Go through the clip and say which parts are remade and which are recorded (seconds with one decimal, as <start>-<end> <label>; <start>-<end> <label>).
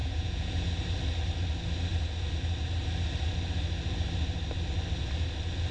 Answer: 0.0-0.7 remade; 0.7-5.7 recorded